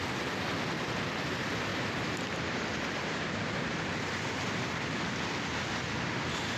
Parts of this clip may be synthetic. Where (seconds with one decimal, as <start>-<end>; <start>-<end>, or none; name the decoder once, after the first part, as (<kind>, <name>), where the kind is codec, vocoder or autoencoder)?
1.7-5.7 (vocoder, BigVGAN v2)